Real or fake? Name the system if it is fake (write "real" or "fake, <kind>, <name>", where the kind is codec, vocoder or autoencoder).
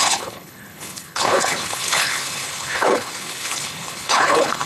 fake, codec, HILCodec